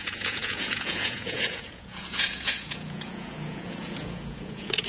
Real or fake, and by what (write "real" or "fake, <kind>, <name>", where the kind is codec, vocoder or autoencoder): fake, vocoder, Vocos